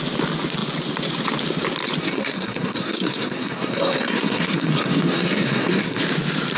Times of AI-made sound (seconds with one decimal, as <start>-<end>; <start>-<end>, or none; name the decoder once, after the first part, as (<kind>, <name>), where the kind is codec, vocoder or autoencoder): 2.0-6.0 (codec, SNAC)

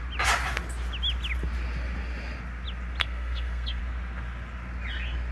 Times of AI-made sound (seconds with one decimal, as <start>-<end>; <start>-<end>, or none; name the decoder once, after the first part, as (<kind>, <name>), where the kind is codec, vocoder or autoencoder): 3.0-3.8 (codec, SNAC)

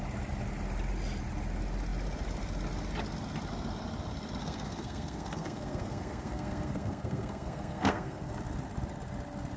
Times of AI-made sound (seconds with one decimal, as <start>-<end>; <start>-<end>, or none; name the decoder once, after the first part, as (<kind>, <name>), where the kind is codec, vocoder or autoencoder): 4.4-8.3 (codec, SNAC)